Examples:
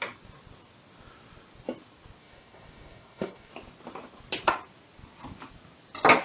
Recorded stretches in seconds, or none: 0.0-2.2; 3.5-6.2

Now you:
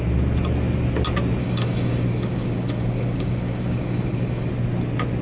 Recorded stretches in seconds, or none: 0.0-1.4; 4.5-5.2

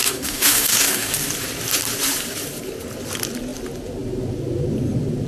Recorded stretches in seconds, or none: 1.3-5.3

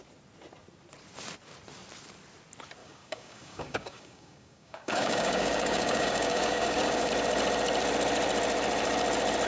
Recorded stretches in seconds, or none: 0.0-2.8; 7.1-9.5

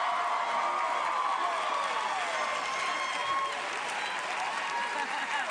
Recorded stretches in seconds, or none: 0.0-5.5

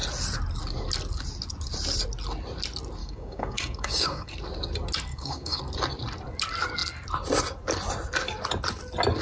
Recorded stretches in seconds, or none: 0.0-3.0; 4.3-5.1; 5.6-9.2